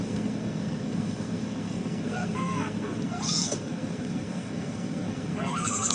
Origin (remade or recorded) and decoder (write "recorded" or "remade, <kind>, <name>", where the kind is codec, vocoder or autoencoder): remade, codec, SNAC